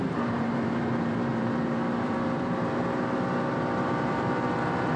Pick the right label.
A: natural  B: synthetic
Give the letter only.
B